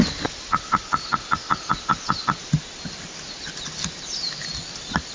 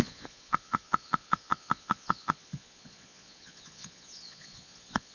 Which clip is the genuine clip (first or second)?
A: first